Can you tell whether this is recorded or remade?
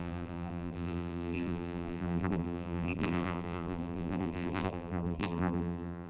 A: remade